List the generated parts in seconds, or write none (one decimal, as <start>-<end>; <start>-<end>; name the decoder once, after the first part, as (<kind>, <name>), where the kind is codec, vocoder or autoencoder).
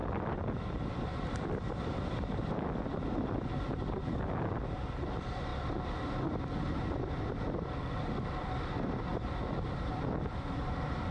0.0-3.5 (vocoder, BigVGAN v2); 9.1-11.1